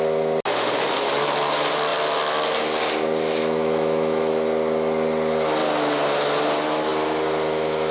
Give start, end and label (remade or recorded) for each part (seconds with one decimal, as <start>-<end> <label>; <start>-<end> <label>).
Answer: 0.0-3.4 recorded; 3.4-4.3 remade; 4.3-7.9 recorded